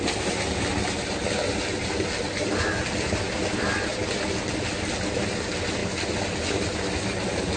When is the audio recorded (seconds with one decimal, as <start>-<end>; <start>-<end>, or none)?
0.0-7.6